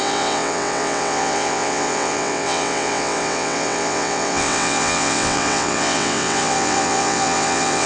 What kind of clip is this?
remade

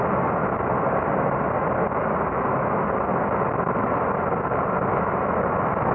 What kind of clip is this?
recorded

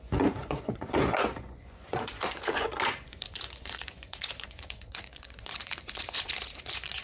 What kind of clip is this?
remade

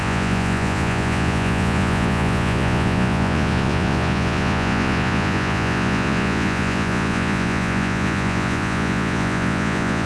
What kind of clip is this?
remade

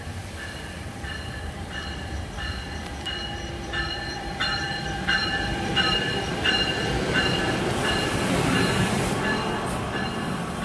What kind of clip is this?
remade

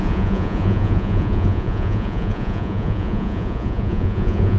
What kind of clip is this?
remade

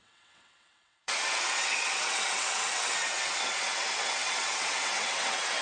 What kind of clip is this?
remade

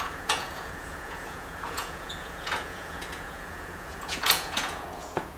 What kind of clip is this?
remade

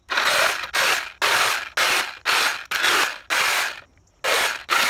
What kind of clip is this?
recorded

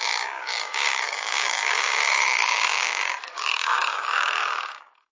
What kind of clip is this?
remade